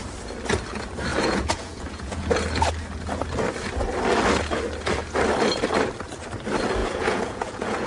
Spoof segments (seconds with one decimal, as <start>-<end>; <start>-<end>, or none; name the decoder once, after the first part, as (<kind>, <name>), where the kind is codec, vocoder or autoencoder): 1.1-2.3 (vocoder, Vocos); 6.8-7.9